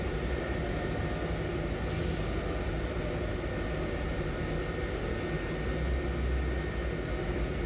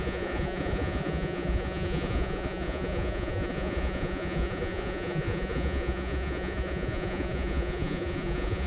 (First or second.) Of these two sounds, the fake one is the second